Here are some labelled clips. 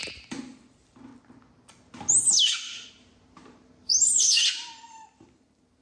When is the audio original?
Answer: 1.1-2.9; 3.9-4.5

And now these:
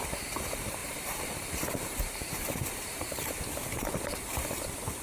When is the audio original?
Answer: 0.0-0.8; 3.3-5.0

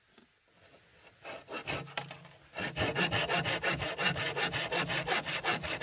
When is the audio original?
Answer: 0.9-1.9; 2.9-4.4

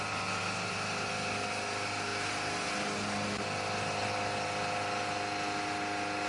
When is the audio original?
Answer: 0.0-6.3

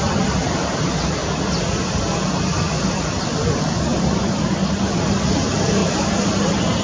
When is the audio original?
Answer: 0.0-3.9; 4.8-5.8; 6.3-6.8

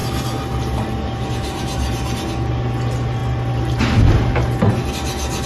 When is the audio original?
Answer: 0.0-5.5

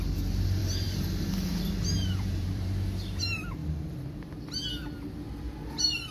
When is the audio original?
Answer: 0.0-0.6; 3.2-6.1